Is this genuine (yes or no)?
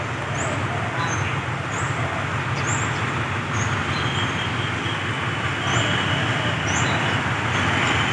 yes